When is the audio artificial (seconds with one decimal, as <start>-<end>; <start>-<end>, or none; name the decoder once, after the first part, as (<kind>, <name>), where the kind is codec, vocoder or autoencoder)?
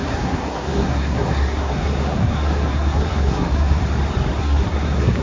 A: 0.0-3.8 (codec, SNAC); 4.4-5.2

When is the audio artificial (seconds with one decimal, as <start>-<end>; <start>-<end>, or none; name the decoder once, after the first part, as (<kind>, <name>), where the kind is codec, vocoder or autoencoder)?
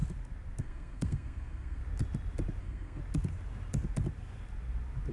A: 0.6-1.8 (codec, SNAC); 2.6-3.0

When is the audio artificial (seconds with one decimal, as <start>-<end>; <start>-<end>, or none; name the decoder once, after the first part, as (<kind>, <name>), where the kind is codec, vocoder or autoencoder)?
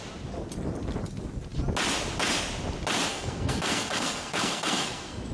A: 3.1-5.3 (codec, SNAC)